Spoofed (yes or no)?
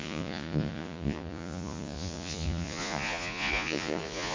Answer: yes